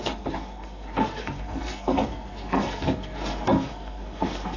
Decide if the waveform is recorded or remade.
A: remade